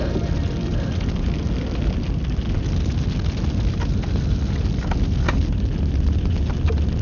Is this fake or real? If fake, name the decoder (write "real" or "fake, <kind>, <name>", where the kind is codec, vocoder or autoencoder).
real